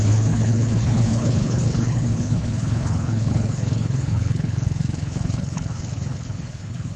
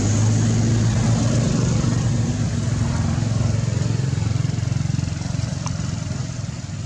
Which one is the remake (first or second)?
first